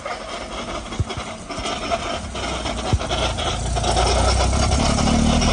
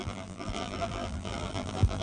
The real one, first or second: first